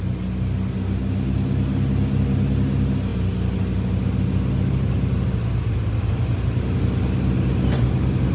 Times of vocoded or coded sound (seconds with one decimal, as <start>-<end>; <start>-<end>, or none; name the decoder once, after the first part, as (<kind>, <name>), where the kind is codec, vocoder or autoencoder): none